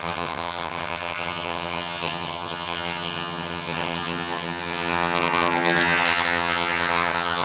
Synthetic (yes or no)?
yes